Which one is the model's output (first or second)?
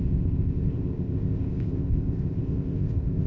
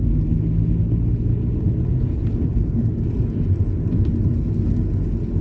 first